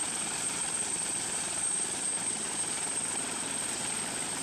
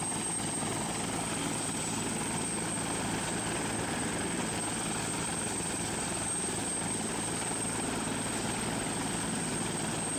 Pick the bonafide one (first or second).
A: second